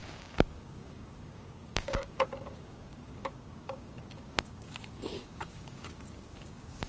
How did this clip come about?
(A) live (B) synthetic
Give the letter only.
B